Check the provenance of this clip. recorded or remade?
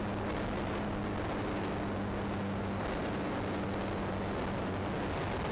recorded